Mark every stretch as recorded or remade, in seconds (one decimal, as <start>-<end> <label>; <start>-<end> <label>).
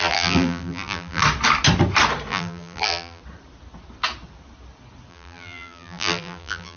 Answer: 0.0-1.2 remade; 1.2-2.3 recorded; 2.3-3.2 remade; 3.2-5.1 recorded; 5.1-6.8 remade